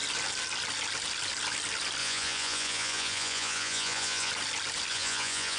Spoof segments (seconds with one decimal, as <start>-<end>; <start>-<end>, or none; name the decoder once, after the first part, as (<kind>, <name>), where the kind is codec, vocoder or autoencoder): 2.0-4.3 (vocoder, Vocos); 4.9-5.6